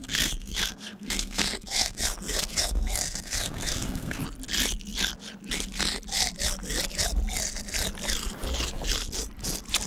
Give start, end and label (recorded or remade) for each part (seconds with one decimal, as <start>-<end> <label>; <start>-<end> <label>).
0.0-4.2 remade; 4.2-9.9 recorded